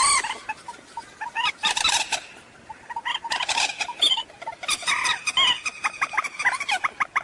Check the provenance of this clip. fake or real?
real